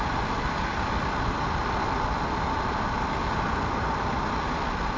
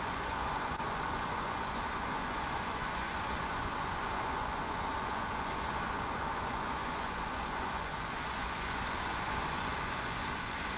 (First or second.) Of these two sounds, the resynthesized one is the second